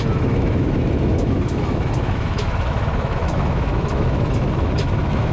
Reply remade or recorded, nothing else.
remade